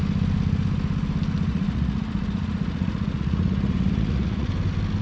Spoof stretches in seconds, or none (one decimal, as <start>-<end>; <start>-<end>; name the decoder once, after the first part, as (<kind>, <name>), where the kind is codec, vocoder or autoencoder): 1.5-4.5 (vocoder, Vocos)